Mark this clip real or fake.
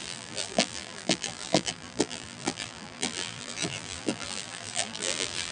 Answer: fake